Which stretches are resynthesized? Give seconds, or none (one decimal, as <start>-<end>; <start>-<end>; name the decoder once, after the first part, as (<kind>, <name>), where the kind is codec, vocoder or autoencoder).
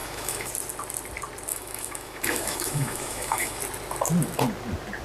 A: 0.0-0.5 (autoencoder, DAC-VAE); 1.5-3.6